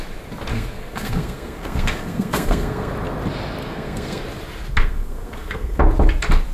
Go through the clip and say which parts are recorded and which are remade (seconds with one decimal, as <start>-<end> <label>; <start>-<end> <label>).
0.0-0.5 recorded; 0.5-2.9 remade; 2.9-3.6 recorded; 3.6-4.2 remade; 4.2-4.8 recorded; 4.8-5.8 remade; 5.8-6.5 recorded

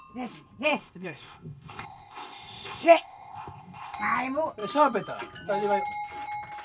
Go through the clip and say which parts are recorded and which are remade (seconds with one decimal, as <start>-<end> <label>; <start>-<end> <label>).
0.0-0.7 recorded; 0.7-4.0 remade; 4.0-6.6 recorded